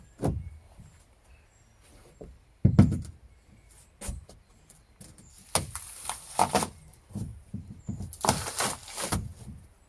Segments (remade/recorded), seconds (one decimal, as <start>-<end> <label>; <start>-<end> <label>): 0.0-7.3 recorded; 7.3-7.8 remade; 7.8-9.9 recorded